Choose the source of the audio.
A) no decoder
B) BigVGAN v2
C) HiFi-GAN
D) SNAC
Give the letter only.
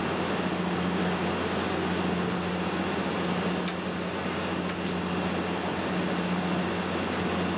A